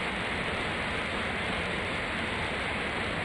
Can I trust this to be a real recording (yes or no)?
yes